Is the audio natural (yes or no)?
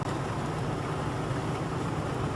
yes